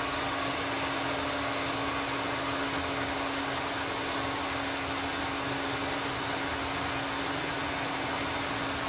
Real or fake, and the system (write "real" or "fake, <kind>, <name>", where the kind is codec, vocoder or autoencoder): real